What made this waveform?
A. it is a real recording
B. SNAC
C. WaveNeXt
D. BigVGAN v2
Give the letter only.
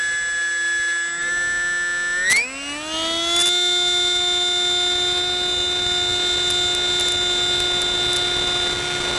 A